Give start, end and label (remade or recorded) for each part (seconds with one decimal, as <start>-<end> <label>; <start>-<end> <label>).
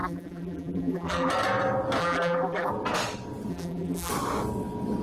0.0-1.3 remade; 1.3-2.0 recorded; 2.0-2.7 remade; 2.7-3.5 recorded; 3.5-4.1 remade; 4.1-5.0 recorded